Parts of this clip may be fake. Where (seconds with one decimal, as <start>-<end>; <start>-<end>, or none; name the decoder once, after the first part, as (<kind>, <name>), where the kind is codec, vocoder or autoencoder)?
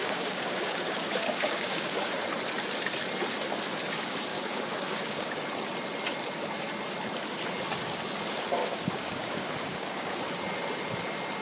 0.0-2.1 (codec, DAC); 4.3-5.4; 8.6-10.2